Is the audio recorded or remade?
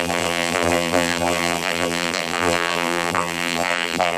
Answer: remade